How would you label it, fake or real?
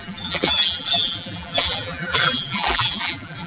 fake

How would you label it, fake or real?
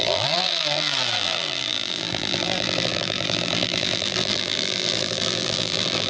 fake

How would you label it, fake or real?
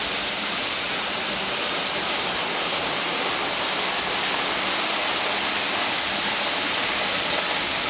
real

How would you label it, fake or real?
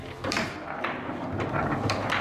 fake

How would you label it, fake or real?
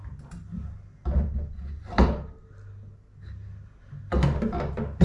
real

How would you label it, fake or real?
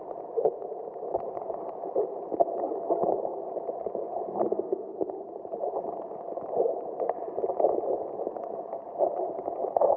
fake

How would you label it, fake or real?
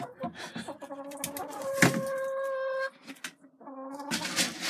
real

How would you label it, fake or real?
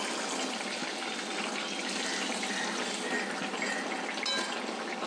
real